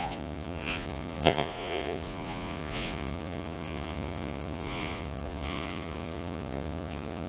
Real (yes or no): no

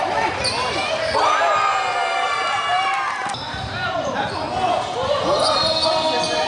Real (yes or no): yes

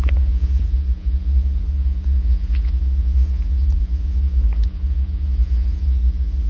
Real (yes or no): no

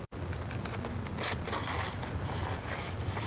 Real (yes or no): yes